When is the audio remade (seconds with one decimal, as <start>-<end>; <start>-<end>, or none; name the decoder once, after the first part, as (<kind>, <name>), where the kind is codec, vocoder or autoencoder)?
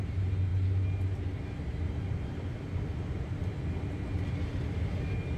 none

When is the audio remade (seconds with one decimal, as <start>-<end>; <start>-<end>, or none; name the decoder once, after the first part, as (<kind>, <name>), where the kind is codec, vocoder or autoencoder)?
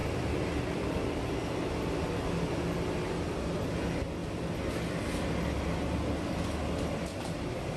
0.0-0.9 (vocoder, BigVGAN v2)